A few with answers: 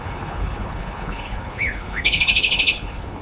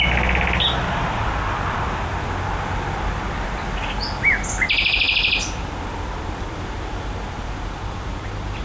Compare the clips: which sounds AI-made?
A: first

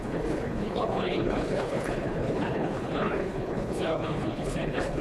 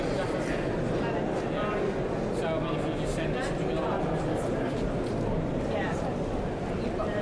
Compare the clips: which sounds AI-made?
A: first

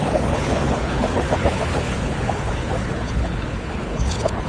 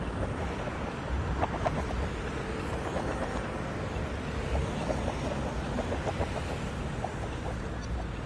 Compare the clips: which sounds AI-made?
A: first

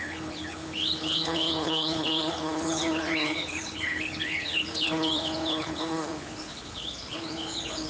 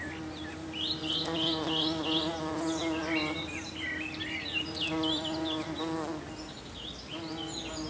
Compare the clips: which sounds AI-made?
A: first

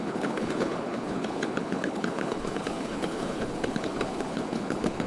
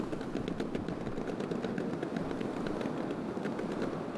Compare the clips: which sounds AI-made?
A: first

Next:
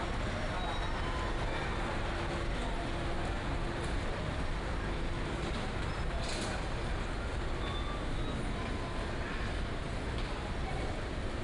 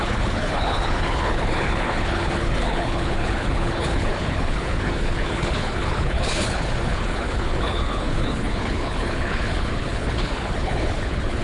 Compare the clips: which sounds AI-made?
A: second